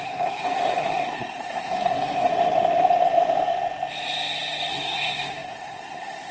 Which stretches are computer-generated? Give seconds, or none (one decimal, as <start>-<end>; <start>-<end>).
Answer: 0.0-2.3; 4.7-6.3